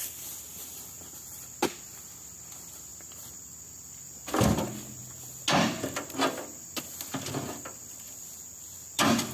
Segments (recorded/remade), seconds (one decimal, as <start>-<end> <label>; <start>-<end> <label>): 0.0-9.3 recorded